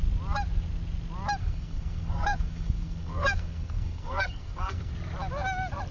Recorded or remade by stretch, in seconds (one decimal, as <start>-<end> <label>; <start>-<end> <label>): 0.0-1.4 recorded; 1.4-4.9 remade; 4.9-5.9 recorded